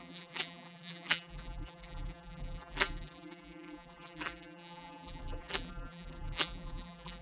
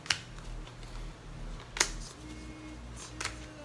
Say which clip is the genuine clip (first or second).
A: second